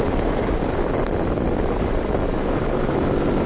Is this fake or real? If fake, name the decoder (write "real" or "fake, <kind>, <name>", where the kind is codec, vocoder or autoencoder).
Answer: real